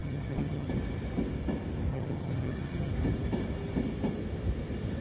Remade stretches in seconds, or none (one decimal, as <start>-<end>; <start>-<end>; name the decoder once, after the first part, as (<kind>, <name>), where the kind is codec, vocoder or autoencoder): 0.0-0.7 (vocoder, HiFi-GAN); 1.9-2.9